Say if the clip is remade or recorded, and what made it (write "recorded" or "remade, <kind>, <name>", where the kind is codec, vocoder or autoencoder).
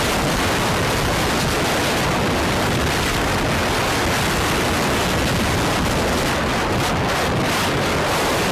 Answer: recorded